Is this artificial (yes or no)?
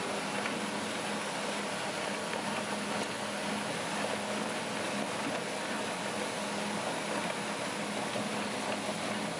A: no